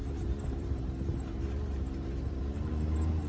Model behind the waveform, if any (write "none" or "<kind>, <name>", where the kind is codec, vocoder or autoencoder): vocoder, BigVGAN v2